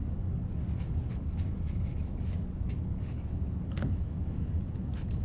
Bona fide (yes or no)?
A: no